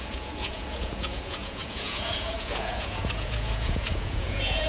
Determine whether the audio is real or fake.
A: fake